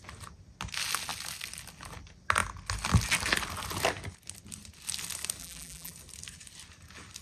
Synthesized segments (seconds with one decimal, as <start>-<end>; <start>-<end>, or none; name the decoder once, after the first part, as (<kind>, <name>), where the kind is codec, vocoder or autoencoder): 5.4-5.9 (vocoder, BigVGAN v2)